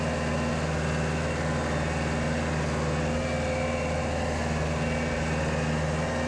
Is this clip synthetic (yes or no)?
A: no